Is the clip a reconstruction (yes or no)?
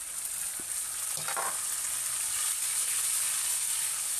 no